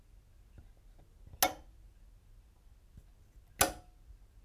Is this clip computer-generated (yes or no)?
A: no